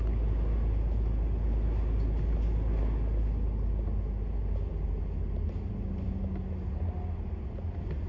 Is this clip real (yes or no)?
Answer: yes